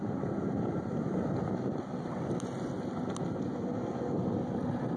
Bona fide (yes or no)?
yes